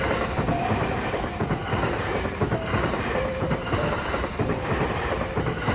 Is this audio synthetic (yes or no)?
yes